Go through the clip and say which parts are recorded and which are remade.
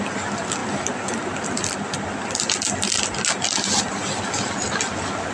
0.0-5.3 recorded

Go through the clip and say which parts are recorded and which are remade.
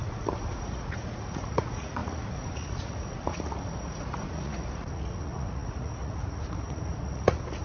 0.0-7.6 remade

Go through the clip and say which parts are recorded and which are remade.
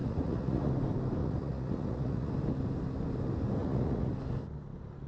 0.0-0.7 remade; 0.7-1.2 recorded; 1.2-2.3 remade; 2.3-3.6 recorded; 3.6-4.1 remade; 4.1-5.1 recorded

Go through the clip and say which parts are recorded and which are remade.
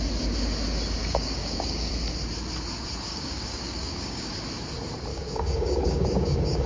0.0-1.0 recorded; 1.0-1.9 remade; 1.9-3.1 recorded; 3.1-4.3 remade; 4.3-5.1 recorded; 5.1-6.7 remade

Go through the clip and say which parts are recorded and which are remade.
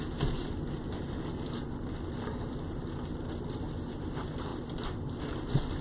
0.0-4.5 recorded; 4.5-5.2 remade; 5.2-5.8 recorded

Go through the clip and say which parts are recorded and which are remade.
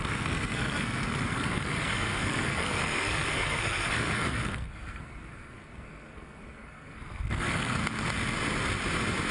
0.0-7.8 remade; 7.8-9.3 recorded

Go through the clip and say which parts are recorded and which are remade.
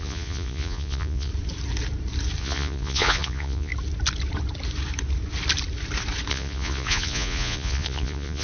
0.0-1.3 remade; 1.3-2.4 recorded; 2.4-3.7 remade; 3.7-6.3 recorded; 6.3-8.4 remade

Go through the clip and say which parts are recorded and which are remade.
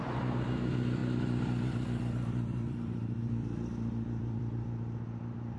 0.0-5.6 recorded